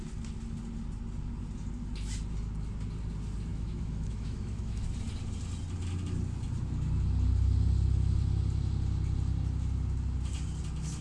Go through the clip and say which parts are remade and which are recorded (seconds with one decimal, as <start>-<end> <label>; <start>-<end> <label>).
0.0-3.5 recorded; 3.5-4.8 remade; 4.8-11.0 recorded